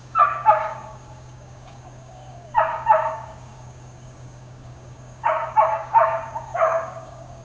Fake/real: fake